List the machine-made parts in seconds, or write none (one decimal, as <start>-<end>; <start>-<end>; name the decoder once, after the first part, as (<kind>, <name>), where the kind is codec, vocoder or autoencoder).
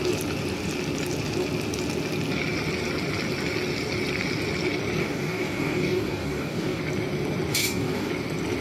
5.0-6.8 (codec, DAC); 7.5-8.1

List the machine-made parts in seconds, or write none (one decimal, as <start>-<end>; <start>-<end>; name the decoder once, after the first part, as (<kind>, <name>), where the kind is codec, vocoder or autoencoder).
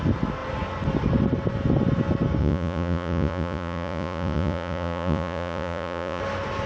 2.4-6.2 (vocoder, Vocos)